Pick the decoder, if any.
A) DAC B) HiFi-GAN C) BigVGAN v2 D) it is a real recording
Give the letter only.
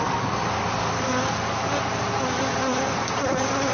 D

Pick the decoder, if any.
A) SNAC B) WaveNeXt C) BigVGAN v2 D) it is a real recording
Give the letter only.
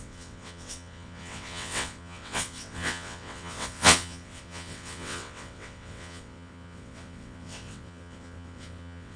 B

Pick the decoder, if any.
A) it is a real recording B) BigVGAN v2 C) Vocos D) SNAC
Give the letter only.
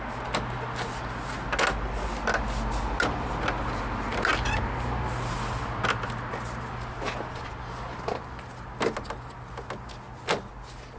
A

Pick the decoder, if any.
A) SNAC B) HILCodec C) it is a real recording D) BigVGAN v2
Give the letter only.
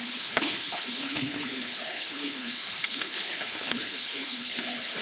B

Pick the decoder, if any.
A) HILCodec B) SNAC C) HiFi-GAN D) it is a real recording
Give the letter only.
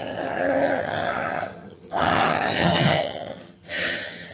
C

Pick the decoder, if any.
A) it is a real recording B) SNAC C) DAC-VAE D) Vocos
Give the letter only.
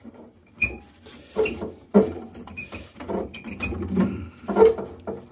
A